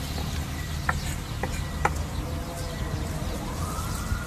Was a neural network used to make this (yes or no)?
no